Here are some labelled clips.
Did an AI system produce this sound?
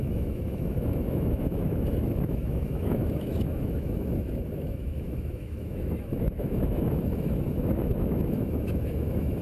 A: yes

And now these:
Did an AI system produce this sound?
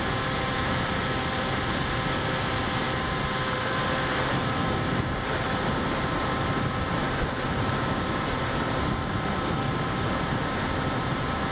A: yes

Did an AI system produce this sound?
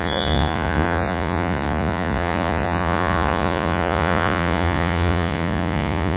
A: yes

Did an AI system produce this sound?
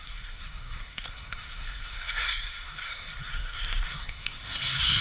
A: yes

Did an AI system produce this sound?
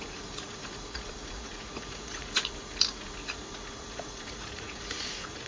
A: yes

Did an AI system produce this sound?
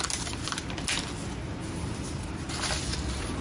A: no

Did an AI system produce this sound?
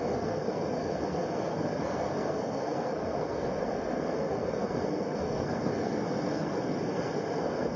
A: yes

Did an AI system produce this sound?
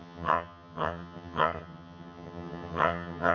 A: yes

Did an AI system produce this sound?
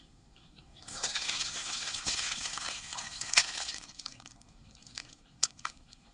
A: yes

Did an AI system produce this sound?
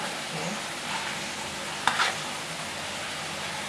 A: no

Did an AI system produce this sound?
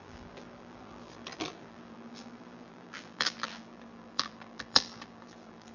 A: yes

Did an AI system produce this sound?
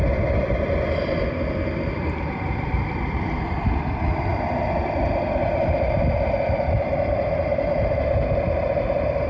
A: yes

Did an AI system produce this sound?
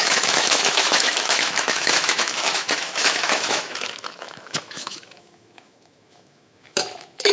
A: yes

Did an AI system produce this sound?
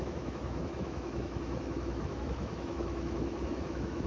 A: yes